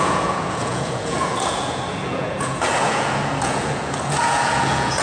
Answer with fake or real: fake